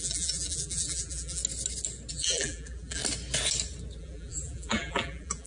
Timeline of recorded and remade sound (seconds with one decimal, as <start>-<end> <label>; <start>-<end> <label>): 0.0-1.4 remade; 1.4-2.1 recorded; 2.1-3.0 remade; 3.0-4.0 recorded; 4.0-5.5 remade